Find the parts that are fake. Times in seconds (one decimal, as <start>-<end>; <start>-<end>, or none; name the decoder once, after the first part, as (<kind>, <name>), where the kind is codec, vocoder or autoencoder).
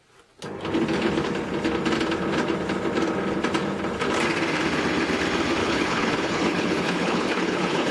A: 5.6-7.9 (codec, HILCodec)